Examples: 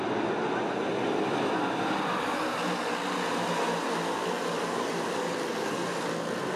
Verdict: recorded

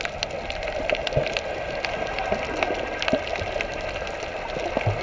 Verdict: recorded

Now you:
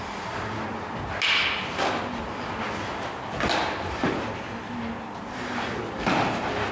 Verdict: recorded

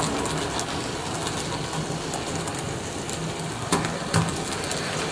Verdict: recorded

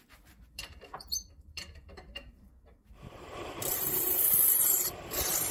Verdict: remade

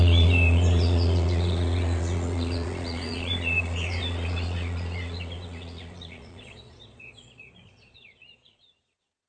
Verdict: remade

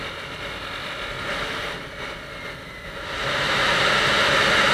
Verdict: recorded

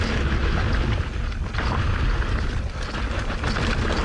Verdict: recorded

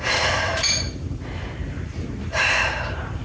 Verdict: remade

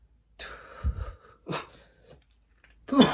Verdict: recorded